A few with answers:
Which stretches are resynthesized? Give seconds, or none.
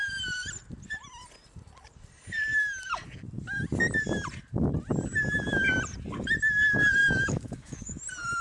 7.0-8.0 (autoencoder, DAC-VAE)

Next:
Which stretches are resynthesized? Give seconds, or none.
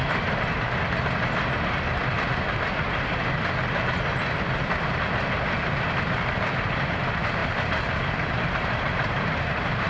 7.4-9.9 (vocoder, BigVGAN v2)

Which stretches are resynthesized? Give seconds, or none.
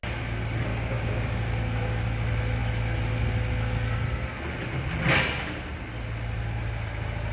0.7-1.5 (codec, DAC)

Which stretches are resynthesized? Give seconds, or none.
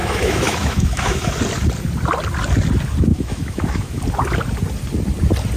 0.0-1.3 (autoencoder, DAC-VAE); 3.1-4.0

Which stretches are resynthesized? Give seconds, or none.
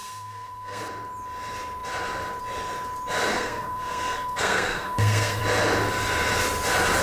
0.0-0.8 (codec, SNAC); 3.3-5.4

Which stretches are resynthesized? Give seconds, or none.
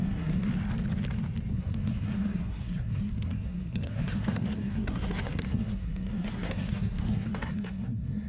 0.0-0.5 (codec, SNAC); 1.5-8.3